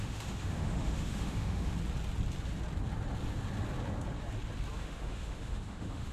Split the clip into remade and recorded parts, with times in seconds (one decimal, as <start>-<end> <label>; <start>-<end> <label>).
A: 0.0-1.7 remade; 1.7-4.8 recorded; 4.8-6.1 remade